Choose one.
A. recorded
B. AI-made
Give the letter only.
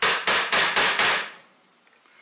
A